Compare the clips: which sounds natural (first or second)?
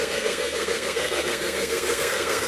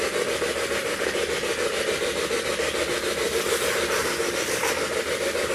second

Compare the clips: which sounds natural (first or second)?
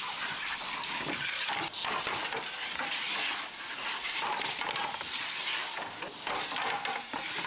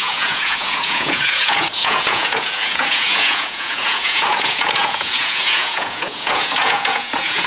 first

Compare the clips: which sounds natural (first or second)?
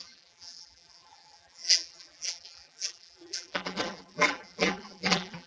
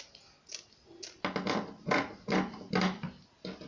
second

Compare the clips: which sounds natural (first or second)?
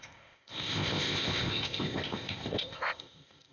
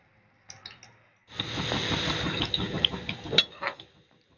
second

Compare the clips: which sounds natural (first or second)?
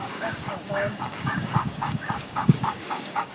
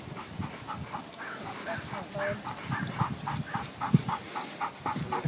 second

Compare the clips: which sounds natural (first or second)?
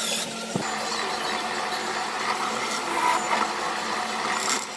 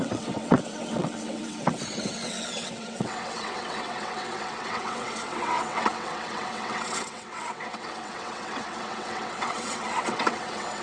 first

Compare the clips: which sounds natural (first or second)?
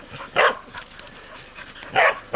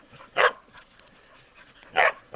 first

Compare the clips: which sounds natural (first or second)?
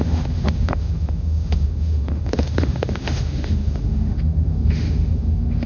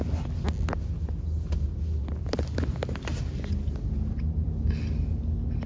second